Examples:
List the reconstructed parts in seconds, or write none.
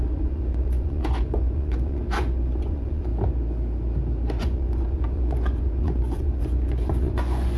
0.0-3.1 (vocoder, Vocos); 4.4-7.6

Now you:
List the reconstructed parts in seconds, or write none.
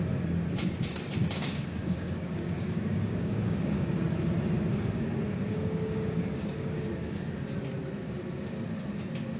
1.2-3.9 (codec, DAC); 4.7-6.9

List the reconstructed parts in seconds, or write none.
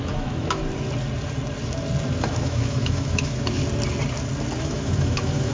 0.0-0.6 (autoencoder, DAC-VAE); 2.2-3.6; 4.6-5.5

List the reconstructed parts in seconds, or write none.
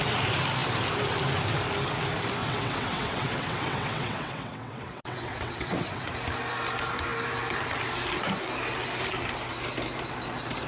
2.4-6.0 (vocoder, WaveNeXt)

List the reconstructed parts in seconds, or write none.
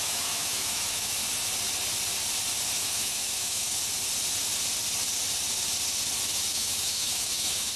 0.0-1.2 (autoencoder, DAC-VAE); 2.8-3.8; 6.5-7.8